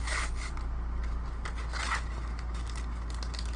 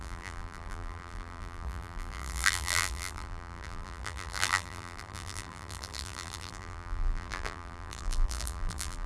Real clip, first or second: first